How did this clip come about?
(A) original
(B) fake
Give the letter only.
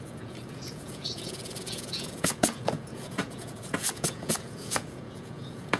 B